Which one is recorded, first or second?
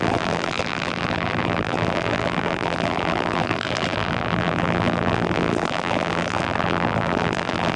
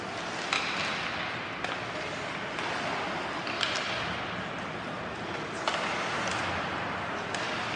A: second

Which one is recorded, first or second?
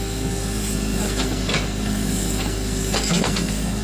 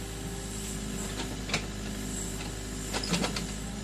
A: second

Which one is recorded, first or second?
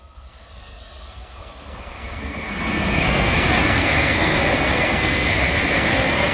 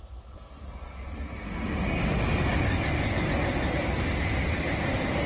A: second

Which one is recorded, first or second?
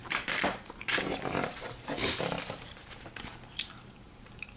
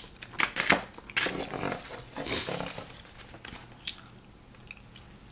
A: second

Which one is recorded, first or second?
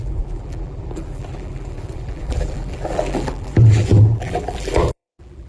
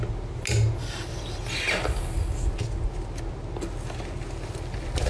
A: second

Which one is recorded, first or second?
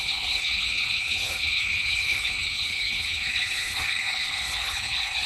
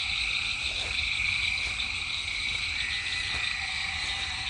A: second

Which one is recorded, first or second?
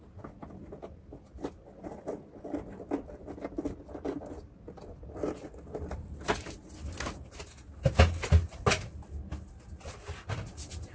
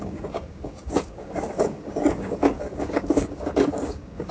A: first